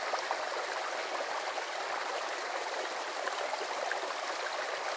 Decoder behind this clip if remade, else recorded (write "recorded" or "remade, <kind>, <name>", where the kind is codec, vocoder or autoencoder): recorded